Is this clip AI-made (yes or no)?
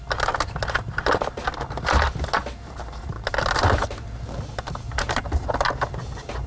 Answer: no